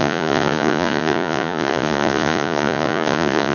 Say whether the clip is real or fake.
fake